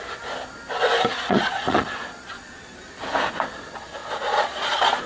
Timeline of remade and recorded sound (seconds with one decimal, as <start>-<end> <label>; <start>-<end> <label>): 0.0-1.1 recorded; 1.1-2.8 remade; 2.8-4.0 recorded; 4.0-5.1 remade